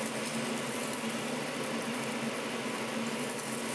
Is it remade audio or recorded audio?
recorded